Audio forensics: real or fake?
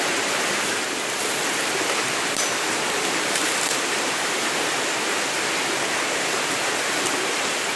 real